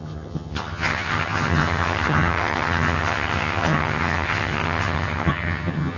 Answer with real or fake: fake